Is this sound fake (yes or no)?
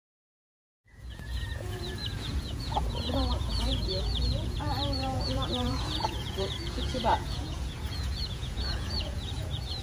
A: yes